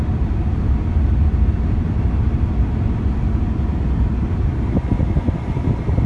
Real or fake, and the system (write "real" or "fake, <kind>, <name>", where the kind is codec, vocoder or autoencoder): real